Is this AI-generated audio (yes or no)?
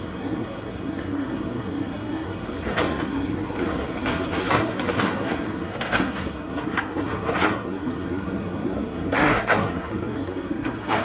yes